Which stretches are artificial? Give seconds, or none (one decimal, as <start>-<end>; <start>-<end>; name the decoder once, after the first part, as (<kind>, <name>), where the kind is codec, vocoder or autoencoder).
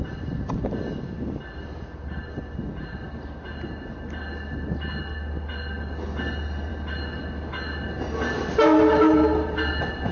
none